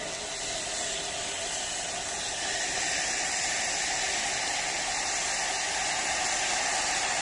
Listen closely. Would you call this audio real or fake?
real